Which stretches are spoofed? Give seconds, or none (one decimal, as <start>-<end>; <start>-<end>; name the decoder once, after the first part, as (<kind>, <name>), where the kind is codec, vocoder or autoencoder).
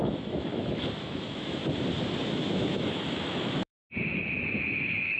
0.0-1.6 (autoencoder, DAC-VAE); 2.2-3.7; 4.4-5.2